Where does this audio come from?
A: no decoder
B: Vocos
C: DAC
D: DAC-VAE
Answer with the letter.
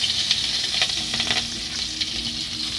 A